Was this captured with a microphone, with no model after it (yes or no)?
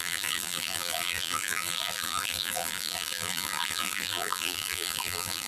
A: no